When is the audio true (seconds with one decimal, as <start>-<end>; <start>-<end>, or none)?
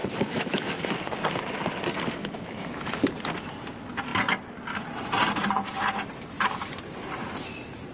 0.9-2.2; 3.0-7.9